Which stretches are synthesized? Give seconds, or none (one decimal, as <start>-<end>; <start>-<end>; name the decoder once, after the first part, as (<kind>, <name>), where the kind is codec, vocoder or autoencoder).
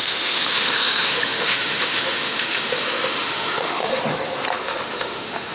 0.0-4.0 (autoencoder, DAC-VAE); 4.6-5.5